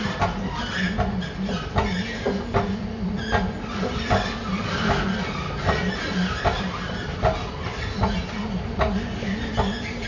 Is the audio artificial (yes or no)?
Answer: no